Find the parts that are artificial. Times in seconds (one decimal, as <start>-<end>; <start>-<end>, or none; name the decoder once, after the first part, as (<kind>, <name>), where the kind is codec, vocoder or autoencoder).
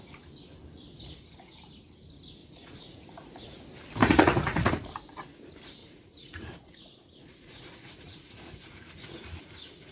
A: 0.9-1.5 (vocoder, Vocos); 2.4-3.6; 4.0-4.7; 5.8-9.4